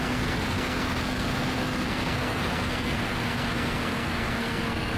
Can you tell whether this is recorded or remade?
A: remade